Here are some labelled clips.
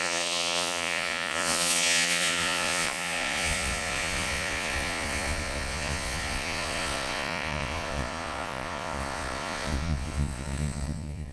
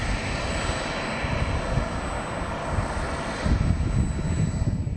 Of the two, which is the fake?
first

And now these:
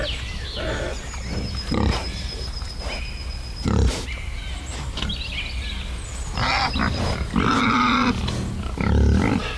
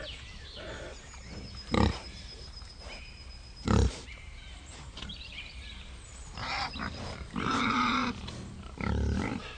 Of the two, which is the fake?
second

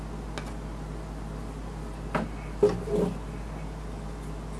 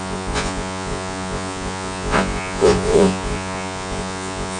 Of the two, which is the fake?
second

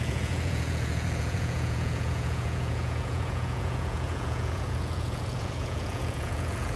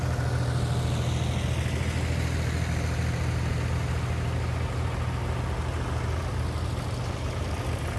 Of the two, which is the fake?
first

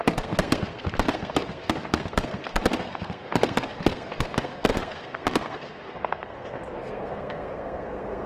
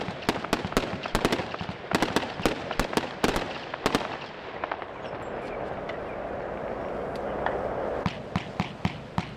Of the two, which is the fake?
first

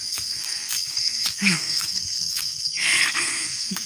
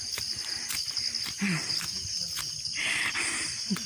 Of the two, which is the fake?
first